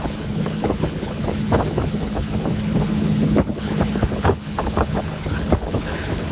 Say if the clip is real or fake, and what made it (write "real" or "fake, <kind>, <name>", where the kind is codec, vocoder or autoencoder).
fake, codec, HILCodec